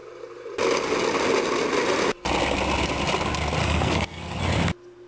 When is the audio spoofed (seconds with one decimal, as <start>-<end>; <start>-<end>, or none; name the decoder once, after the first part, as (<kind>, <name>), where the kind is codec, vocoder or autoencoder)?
3.6-4.4 (codec, SNAC)